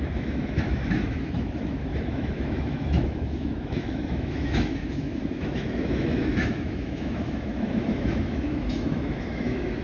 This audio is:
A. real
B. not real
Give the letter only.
B